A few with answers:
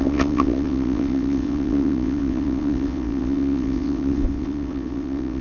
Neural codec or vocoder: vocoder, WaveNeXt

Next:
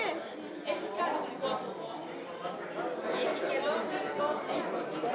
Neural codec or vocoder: none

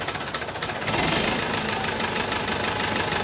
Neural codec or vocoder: none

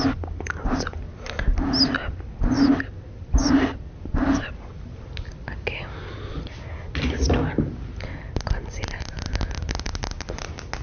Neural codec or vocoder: none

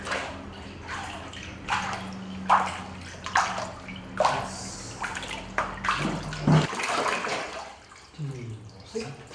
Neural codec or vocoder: none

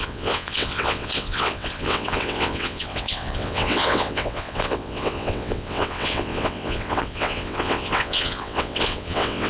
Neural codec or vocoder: vocoder, WaveNeXt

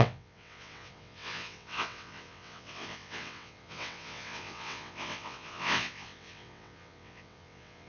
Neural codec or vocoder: vocoder, WaveNeXt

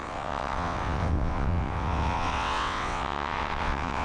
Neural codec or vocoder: vocoder, WaveNeXt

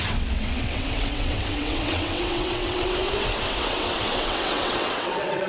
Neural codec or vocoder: vocoder, WaveNeXt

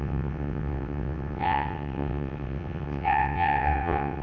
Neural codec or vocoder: vocoder, WaveNeXt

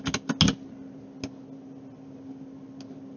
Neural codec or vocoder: none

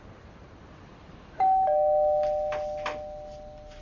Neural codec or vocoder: none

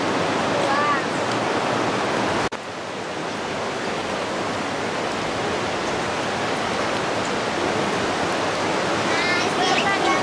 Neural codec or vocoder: none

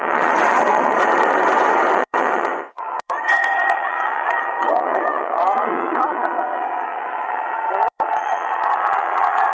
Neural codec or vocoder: vocoder, WaveNeXt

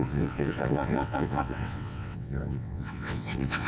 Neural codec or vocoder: vocoder, WaveNeXt